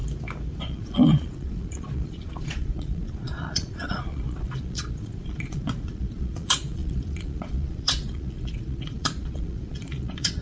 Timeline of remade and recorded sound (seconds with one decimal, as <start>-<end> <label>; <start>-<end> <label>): 0.0-0.6 recorded; 0.6-10.4 remade